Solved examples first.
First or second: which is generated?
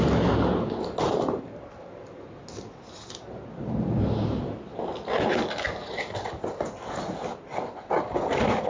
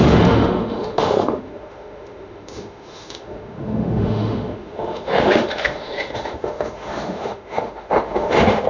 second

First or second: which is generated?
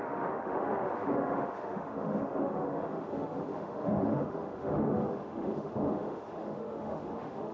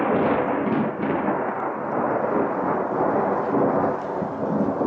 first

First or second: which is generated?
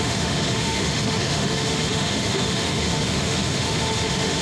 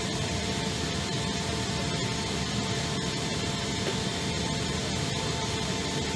first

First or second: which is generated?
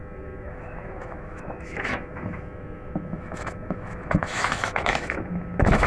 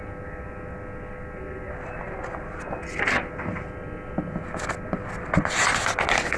first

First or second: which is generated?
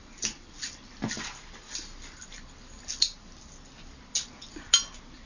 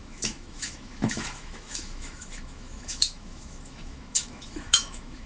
second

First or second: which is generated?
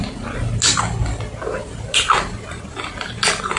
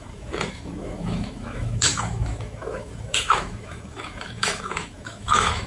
second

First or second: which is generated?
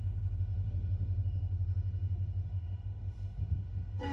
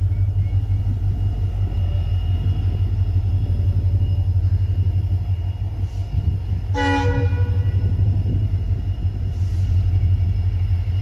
first